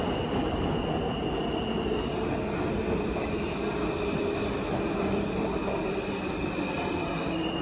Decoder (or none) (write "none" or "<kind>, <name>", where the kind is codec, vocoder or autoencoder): none